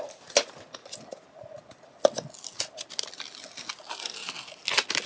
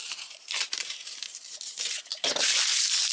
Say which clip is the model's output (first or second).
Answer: second